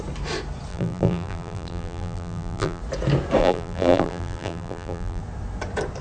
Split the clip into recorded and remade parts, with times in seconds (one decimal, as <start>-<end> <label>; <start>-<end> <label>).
0.0-0.7 recorded; 0.7-2.8 remade; 2.8-3.4 recorded; 3.4-5.2 remade; 5.2-6.0 recorded